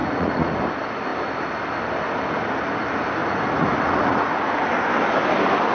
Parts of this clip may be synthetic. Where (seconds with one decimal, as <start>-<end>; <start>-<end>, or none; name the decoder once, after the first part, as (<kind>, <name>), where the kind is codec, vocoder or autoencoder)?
0.0-0.6 (vocoder, Vocos); 3.2-4.7